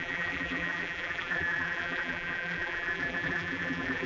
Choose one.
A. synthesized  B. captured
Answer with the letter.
A